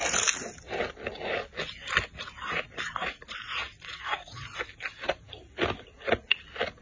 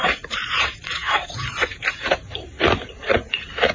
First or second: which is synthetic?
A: second